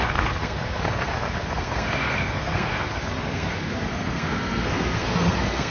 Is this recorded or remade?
remade